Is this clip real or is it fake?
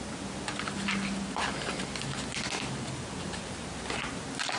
real